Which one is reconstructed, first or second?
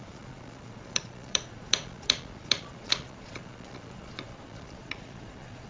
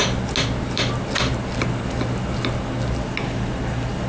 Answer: first